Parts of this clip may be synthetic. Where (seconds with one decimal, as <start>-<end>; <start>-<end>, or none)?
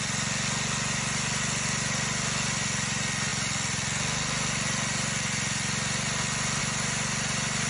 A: none